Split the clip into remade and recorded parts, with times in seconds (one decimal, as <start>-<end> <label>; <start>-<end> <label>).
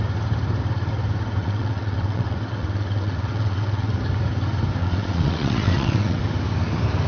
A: 0.0-1.4 recorded; 1.4-3.9 remade; 3.9-4.8 recorded; 4.8-6.2 remade; 6.2-7.1 recorded